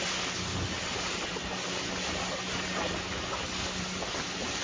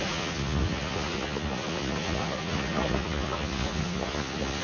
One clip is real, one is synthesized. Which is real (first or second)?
first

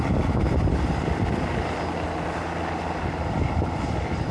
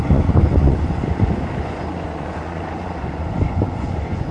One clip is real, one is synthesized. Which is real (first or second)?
first